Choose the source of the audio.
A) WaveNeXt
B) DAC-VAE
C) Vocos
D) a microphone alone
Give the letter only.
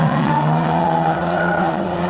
A